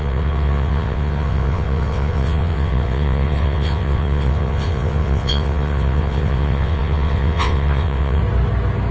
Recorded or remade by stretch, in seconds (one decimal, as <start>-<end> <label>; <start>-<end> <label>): 0.0-8.2 remade; 8.2-8.9 recorded